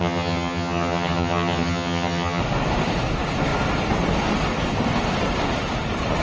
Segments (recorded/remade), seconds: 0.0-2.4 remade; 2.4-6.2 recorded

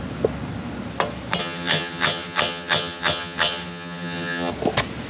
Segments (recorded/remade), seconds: 0.0-1.4 recorded; 1.4-4.5 remade; 4.5-5.1 recorded

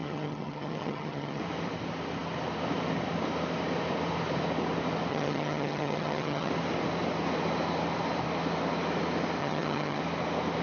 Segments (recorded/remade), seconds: 0.0-1.4 remade; 1.4-5.1 recorded; 5.1-6.5 remade; 6.5-9.4 recorded; 9.4-10.0 remade; 10.0-10.6 recorded

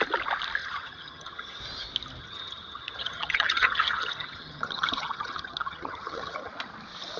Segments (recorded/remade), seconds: 0.0-0.6 recorded; 0.6-1.6 remade; 1.6-2.2 recorded; 2.2-6.5 remade; 6.5-7.2 recorded

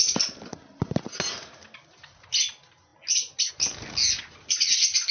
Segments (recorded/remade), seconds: 0.0-5.1 recorded

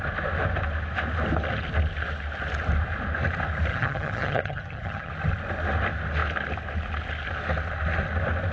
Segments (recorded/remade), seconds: 0.0-3.7 recorded; 3.7-5.1 remade; 5.1-8.5 recorded

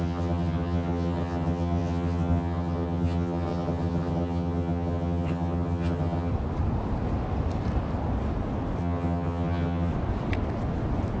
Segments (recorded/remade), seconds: 0.0-6.3 remade; 6.3-8.8 recorded; 8.8-9.9 remade; 9.9-11.2 recorded

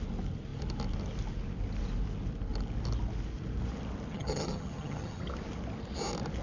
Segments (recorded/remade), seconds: 0.0-4.1 recorded; 4.1-5.2 remade; 5.2-6.4 recorded